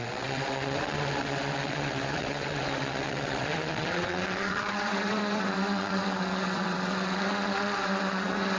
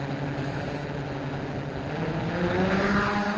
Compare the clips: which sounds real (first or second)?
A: second